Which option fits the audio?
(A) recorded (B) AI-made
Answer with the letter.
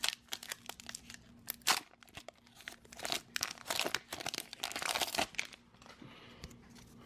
A